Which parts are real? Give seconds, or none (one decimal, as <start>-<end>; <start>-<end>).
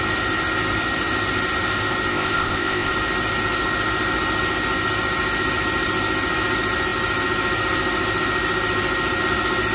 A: 0.0-2.1; 2.9-9.7